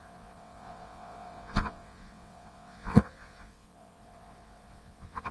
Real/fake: fake